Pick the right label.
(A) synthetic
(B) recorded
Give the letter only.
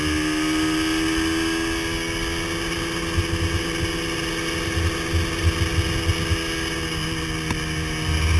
B